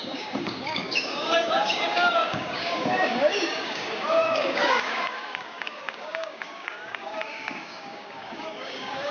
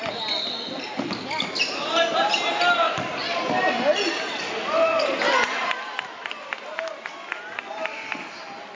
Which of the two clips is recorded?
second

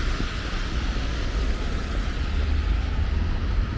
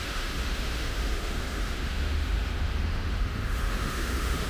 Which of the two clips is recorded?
first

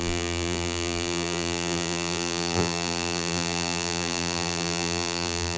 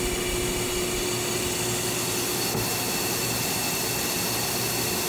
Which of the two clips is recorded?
second